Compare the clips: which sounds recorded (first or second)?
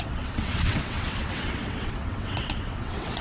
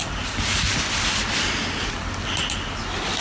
second